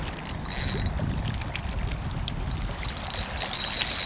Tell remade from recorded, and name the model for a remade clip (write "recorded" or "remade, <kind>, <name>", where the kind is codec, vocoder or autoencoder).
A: recorded